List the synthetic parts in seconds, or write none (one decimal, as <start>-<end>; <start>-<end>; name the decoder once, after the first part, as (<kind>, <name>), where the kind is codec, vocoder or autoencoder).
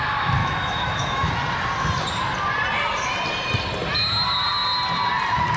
0.4-1.3 (autoencoder, DAC-VAE)